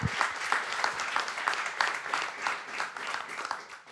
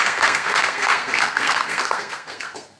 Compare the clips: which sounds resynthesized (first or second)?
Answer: second